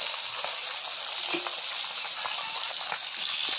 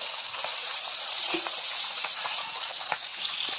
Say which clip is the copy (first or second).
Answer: second